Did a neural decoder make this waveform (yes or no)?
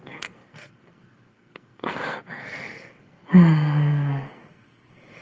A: yes